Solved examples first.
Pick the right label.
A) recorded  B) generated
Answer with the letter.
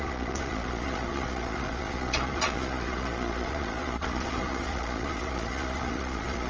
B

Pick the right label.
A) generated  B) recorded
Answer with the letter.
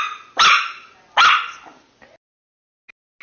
B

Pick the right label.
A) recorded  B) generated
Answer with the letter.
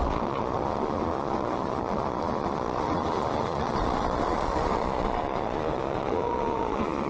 B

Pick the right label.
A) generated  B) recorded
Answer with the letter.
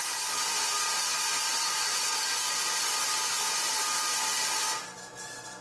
B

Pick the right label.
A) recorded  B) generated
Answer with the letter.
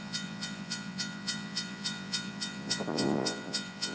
B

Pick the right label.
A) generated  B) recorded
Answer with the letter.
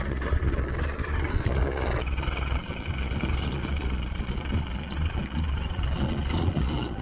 A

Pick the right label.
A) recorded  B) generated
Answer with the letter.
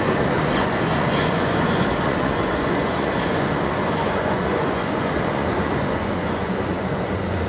B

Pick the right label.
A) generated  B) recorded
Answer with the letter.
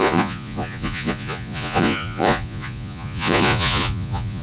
A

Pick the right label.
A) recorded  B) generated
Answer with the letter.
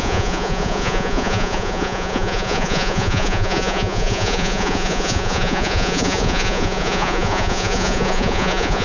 B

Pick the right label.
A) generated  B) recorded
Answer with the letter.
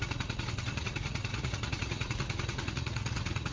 A